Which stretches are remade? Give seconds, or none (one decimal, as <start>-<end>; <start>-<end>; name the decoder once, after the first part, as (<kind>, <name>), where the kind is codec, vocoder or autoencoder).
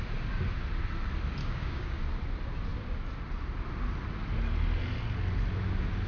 1.4-2.0 (codec, DAC)